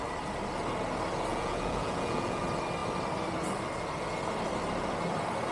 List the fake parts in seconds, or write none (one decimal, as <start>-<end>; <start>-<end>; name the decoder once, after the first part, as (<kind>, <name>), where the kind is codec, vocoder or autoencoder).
1.3-2.4 (vocoder, Vocos)